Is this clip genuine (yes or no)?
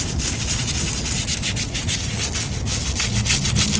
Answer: yes